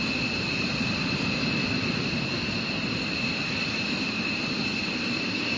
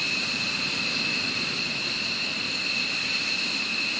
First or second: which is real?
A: second